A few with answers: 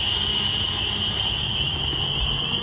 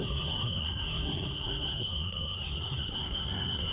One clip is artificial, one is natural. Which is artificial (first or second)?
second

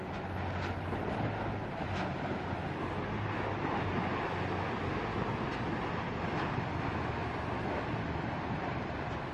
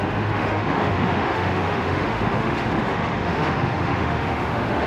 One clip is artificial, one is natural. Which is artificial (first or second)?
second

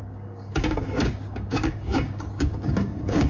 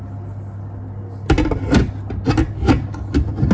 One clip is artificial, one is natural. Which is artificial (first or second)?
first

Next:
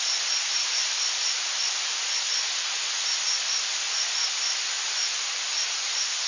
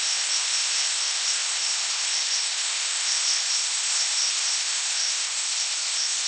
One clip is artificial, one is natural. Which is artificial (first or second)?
second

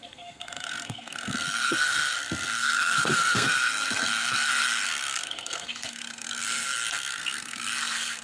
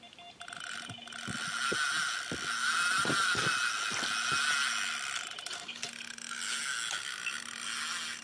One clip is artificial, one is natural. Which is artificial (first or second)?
first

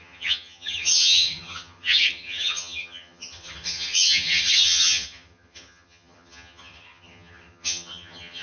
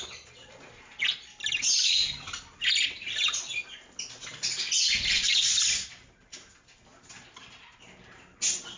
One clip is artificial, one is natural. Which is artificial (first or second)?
first